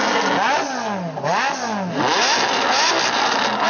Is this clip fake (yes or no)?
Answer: no